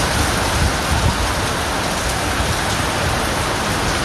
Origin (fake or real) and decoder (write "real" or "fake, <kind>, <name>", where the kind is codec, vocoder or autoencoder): real